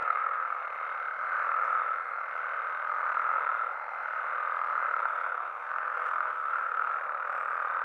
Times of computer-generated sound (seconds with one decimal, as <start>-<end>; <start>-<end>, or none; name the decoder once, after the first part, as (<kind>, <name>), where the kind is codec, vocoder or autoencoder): 0.0-0.6 (codec, SNAC); 5.0-6.9